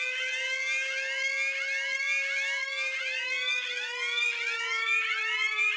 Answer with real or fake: real